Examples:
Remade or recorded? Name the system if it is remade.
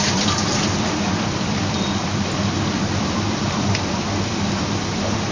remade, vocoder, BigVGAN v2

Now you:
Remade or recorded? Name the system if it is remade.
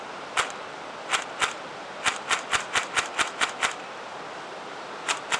recorded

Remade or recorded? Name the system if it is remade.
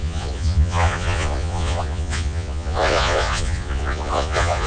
remade, vocoder, Vocos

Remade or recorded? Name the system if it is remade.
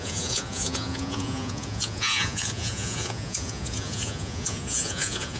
remade, vocoder, Vocos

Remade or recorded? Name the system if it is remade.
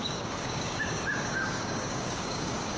remade, codec, DAC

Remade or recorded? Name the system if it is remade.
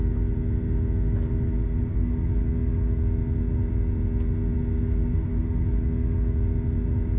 recorded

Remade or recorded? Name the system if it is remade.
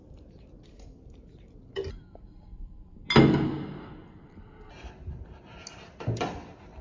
recorded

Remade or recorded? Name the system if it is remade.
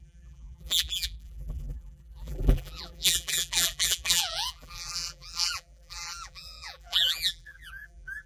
remade, vocoder, BigVGAN v2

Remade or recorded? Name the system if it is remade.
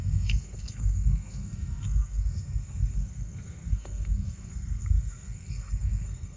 remade, codec, SNAC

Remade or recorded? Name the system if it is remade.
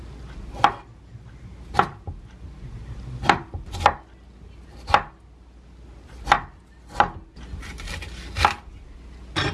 recorded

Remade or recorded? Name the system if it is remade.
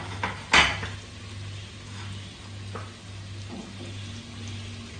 recorded